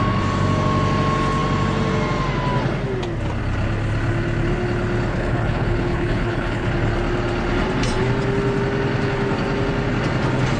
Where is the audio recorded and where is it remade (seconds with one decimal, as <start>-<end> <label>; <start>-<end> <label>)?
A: 0.0-5.1 recorded; 5.1-6.7 remade; 6.7-10.6 recorded